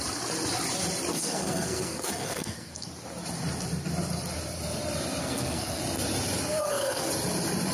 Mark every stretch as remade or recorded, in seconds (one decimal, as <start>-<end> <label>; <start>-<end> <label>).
0.0-1.1 recorded; 1.1-2.9 remade; 2.9-5.2 recorded; 5.2-5.8 remade; 5.8-6.5 recorded; 6.5-7.1 remade; 7.1-7.7 recorded

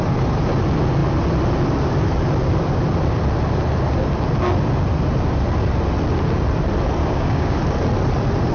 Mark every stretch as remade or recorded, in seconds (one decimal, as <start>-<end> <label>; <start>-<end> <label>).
0.0-7.0 recorded; 7.0-7.6 remade; 7.6-8.5 recorded

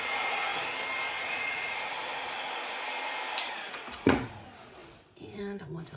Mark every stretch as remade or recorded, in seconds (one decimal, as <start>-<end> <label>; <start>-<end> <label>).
0.0-0.5 remade; 0.5-1.1 recorded; 1.1-2.0 remade; 2.0-3.5 recorded; 3.5-6.0 remade

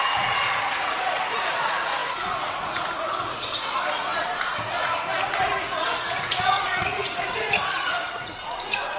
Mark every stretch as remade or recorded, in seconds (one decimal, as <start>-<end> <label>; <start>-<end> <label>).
0.0-9.0 remade

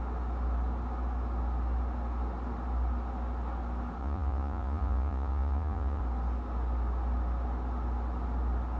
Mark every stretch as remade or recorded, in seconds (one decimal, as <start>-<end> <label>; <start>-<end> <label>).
0.0-4.0 recorded; 4.0-6.0 remade; 6.0-8.8 recorded

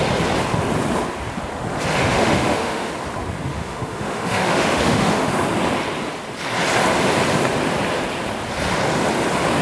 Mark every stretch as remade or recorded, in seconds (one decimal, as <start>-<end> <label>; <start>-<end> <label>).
0.0-2.0 recorded; 2.0-2.9 remade; 2.9-3.5 recorded; 3.5-5.3 remade; 5.3-9.6 recorded